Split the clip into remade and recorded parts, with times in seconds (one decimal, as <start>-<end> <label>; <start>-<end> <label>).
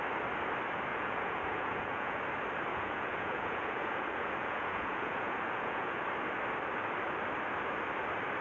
0.0-0.9 recorded; 0.9-2.2 remade; 2.2-2.7 recorded; 2.7-6.0 remade; 6.0-8.4 recorded